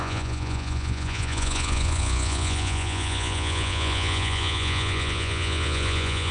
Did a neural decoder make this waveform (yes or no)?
yes